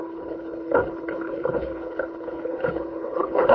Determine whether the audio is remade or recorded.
remade